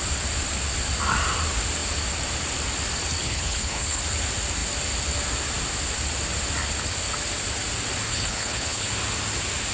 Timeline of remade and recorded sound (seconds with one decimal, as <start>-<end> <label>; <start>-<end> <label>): 0.0-3.2 recorded; 3.2-4.0 remade; 4.0-8.1 recorded; 8.1-8.9 remade; 8.9-9.7 recorded